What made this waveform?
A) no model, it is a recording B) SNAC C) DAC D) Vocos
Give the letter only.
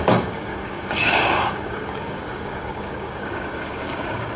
C